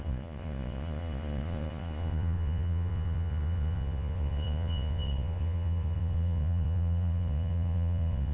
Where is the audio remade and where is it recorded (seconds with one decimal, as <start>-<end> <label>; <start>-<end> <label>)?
0.0-8.3 remade